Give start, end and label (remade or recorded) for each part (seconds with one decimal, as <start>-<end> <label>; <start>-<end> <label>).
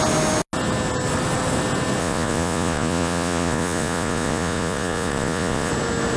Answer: 0.0-2.0 recorded; 2.0-5.7 remade; 5.7-6.2 recorded